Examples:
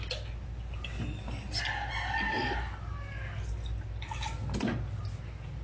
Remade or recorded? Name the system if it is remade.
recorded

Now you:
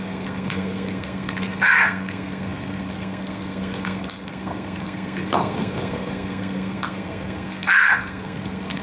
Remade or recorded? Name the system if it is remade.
remade, codec, SNAC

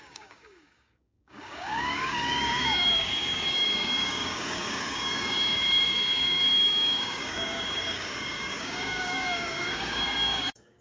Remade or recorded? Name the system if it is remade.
remade, codec, DAC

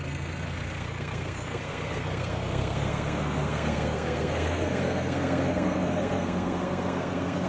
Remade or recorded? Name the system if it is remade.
remade, codec, SNAC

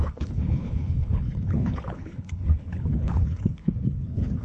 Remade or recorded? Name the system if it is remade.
remade, codec, HILCodec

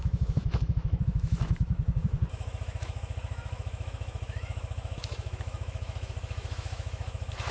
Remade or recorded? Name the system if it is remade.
remade, autoencoder, DAC-VAE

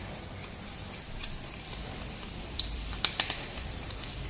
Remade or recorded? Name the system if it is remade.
remade, vocoder, BigVGAN v2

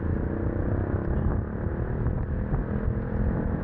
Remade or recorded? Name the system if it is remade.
recorded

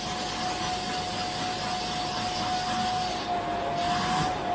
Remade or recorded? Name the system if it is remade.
recorded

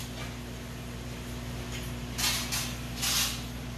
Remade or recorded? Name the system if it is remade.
recorded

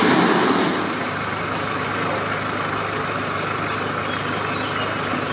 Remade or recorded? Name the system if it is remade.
recorded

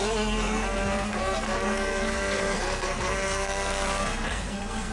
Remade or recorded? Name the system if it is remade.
remade, codec, SNAC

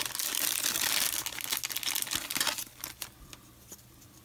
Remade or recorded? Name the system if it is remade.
recorded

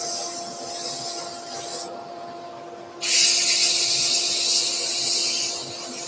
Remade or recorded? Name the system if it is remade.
recorded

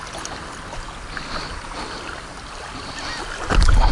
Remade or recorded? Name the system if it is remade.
recorded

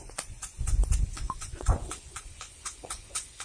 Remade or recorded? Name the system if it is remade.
remade, vocoder, Vocos